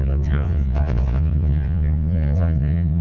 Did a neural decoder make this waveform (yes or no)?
yes